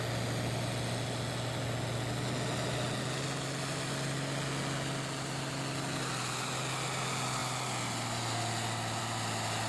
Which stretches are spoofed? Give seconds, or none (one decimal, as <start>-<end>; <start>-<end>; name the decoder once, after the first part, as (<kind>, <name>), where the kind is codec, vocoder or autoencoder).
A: none